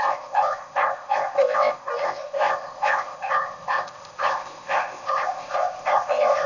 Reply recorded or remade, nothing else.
remade